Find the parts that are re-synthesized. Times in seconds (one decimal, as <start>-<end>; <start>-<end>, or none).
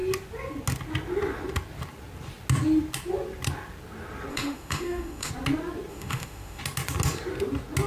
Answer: 4.3-5.3; 5.9-6.6